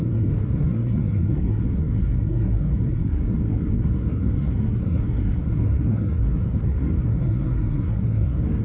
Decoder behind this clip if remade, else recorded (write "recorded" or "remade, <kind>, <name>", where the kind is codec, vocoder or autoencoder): remade, codec, SNAC